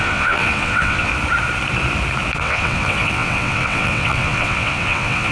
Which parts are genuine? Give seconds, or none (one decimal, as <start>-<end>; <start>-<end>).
1.1-2.4